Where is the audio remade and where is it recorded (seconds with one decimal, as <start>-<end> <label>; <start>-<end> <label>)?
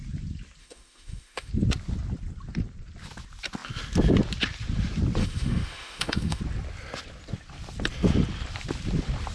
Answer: 0.0-0.6 recorded; 0.6-1.5 remade; 1.5-5.2 recorded; 5.2-6.4 remade; 6.4-9.3 recorded